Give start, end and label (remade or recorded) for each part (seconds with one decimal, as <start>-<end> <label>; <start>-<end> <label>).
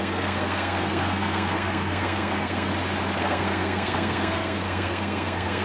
0.0-2.7 remade; 2.7-3.2 recorded; 3.2-5.6 remade